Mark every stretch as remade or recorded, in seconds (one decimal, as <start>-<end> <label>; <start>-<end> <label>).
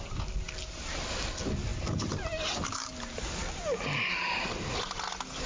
0.0-5.5 recorded